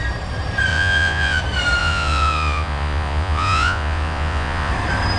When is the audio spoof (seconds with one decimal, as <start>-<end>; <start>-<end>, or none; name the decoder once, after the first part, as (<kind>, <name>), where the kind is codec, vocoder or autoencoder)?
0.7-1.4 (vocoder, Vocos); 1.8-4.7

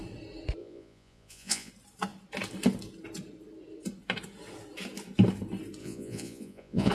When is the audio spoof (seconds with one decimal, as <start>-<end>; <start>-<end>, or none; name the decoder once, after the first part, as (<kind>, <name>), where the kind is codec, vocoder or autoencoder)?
0.6-1.7 (vocoder, Vocos); 5.8-6.9

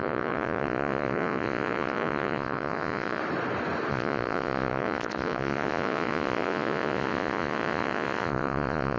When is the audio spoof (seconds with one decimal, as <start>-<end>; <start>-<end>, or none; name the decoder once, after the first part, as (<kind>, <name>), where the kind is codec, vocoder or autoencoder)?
0.0-3.2 (vocoder, Vocos); 3.9-9.0

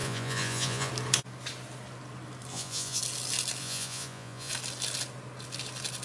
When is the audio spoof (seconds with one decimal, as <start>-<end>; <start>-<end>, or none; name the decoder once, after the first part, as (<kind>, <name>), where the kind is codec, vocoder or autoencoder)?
0.0-0.9 (vocoder, Vocos); 2.5-3.0; 3.6-4.5

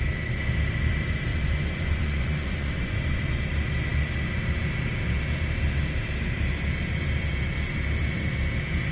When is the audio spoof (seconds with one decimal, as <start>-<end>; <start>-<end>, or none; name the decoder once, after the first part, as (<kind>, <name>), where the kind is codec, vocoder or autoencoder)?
1.3-3.4 (vocoder, Vocos)

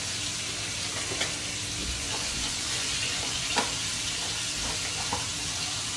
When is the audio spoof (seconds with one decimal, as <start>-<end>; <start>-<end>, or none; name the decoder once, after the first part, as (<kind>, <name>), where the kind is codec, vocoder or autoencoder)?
1.8-3.5 (vocoder, Vocos)

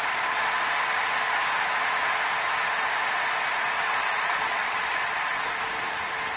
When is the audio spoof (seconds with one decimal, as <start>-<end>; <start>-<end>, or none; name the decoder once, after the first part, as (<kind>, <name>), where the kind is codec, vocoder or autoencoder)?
4.0-5.3 (vocoder, Vocos)

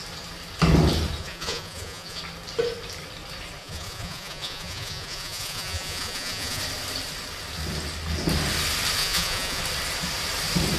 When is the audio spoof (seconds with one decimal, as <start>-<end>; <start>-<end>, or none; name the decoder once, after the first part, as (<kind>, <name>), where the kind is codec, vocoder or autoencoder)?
1.2-2.2 (vocoder, Vocos); 3.6-6.6; 9.0-9.6